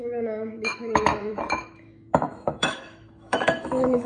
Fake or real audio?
fake